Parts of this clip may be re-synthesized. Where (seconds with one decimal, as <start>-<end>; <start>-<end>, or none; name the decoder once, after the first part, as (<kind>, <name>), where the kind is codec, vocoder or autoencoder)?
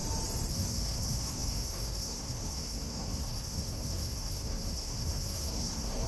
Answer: 0.5-6.1 (codec, SNAC)